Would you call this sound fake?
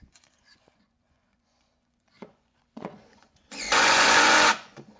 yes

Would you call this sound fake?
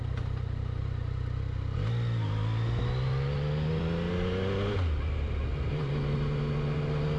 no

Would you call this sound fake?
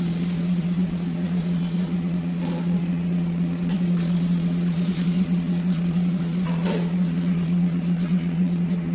yes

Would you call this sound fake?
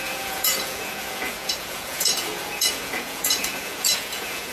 yes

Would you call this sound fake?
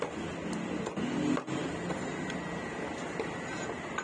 no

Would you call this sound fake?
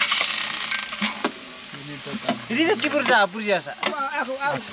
no